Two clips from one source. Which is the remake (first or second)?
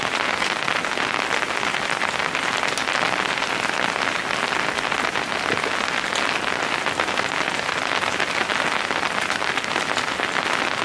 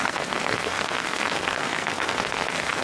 second